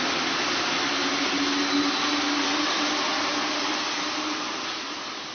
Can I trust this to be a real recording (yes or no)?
yes